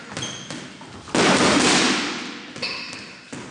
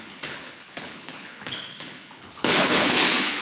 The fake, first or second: second